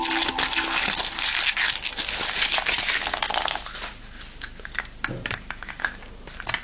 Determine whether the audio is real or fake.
real